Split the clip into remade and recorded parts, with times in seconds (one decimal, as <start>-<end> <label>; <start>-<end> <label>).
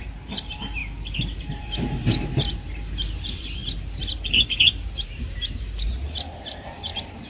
0.0-0.8 remade; 0.8-1.6 recorded; 1.6-7.3 remade